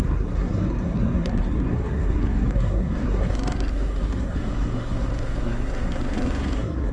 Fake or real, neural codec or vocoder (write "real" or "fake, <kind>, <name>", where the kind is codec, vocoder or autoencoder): fake, codec, SNAC